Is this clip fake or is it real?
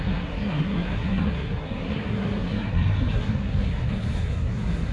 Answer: fake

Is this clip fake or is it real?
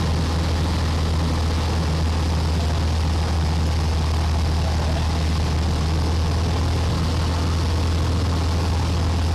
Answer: real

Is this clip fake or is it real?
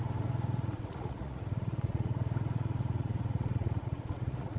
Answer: fake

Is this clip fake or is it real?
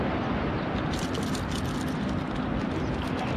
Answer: real